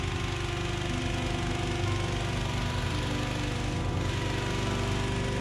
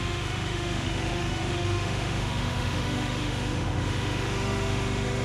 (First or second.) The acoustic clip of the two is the first